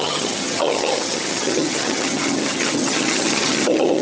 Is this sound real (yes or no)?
no